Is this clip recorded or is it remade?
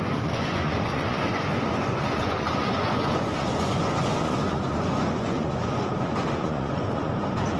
remade